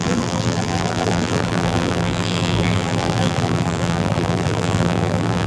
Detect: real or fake fake